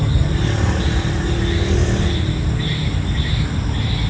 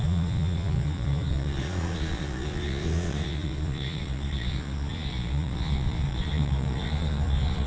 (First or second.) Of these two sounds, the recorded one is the first